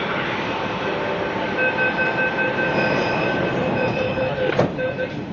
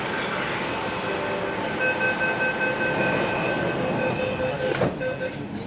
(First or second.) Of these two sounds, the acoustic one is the second